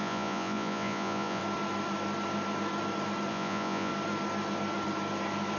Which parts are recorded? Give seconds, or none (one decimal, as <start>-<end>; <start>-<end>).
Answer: 1.4-3.3; 3.9-5.6